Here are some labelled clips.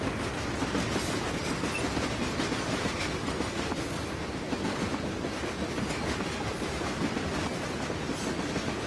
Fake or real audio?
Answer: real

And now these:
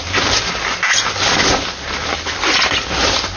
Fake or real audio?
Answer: real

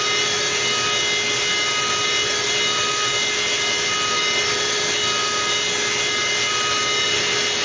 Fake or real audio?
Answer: real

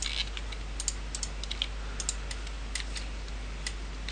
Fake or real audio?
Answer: real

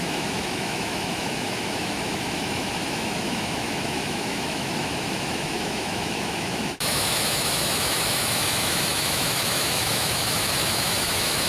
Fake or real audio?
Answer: fake